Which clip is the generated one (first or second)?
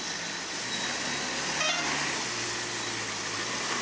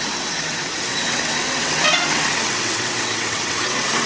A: second